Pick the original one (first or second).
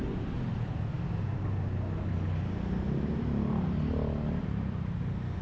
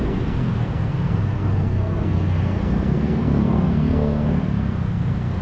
first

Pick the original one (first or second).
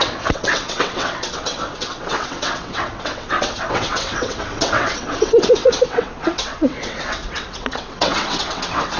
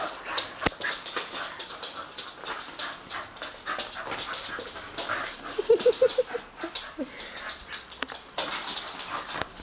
second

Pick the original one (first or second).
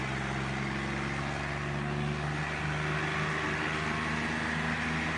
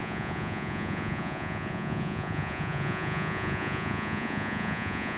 first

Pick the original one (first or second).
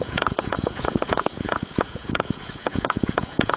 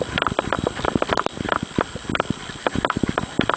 second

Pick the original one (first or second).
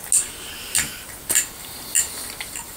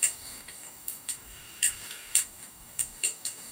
first